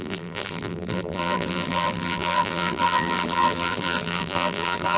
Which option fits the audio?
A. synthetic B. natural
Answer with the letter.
A